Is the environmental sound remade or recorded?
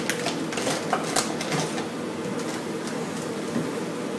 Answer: recorded